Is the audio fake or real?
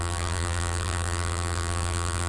fake